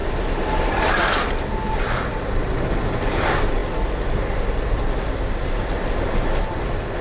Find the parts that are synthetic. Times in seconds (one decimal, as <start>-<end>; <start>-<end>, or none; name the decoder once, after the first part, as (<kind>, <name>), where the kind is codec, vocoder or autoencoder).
none